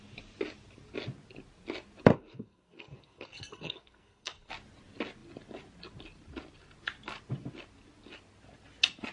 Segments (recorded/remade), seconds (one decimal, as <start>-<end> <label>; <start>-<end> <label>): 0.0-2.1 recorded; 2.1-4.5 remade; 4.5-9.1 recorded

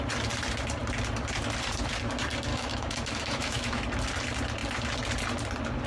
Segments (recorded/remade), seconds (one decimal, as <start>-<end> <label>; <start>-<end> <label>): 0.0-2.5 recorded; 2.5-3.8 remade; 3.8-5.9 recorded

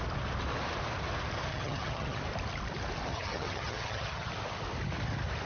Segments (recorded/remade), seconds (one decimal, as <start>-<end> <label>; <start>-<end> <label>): 0.0-1.5 recorded; 1.5-2.2 remade; 2.2-3.1 recorded; 3.1-4.3 remade; 4.3-5.5 recorded

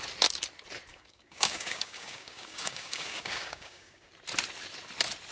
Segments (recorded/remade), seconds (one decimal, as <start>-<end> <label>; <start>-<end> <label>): 0.0-0.9 recorded; 0.9-4.1 remade; 4.1-5.3 recorded

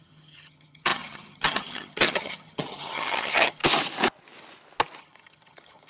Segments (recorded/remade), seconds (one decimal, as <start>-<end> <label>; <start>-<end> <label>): 0.0-3.6 remade; 3.6-5.0 recorded; 5.0-5.9 remade

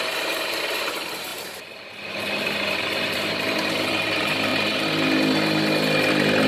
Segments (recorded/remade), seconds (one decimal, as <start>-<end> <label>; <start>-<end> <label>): 0.0-4.5 remade; 4.5-6.1 recorded; 6.1-6.5 remade